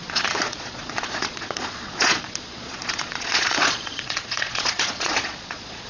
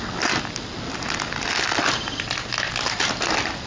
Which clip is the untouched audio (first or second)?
second